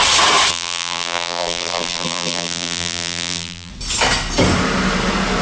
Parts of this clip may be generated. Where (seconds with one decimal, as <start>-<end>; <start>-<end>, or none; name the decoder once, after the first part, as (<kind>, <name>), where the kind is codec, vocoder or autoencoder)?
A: 0.5-3.7 (vocoder, BigVGAN v2)